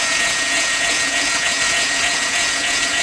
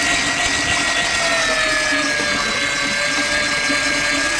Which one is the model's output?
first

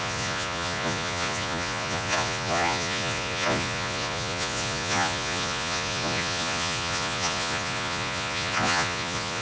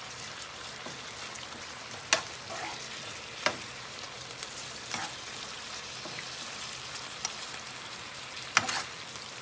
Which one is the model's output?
first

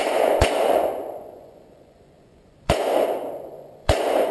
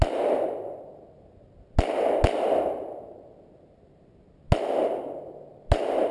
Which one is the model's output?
first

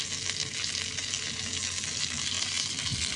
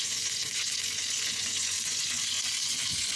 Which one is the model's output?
second